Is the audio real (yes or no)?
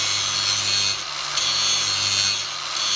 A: yes